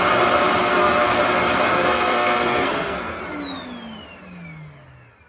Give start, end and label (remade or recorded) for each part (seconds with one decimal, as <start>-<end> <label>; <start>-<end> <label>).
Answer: 0.0-0.6 recorded; 0.6-1.2 remade; 1.2-1.7 recorded; 1.7-3.2 remade; 3.2-5.3 recorded